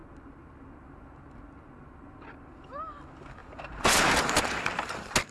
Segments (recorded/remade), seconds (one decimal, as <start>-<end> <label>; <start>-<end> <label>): 0.0-3.4 recorded; 3.4-4.6 remade; 4.6-5.3 recorded